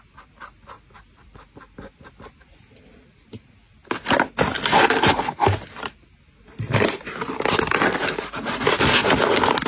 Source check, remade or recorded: recorded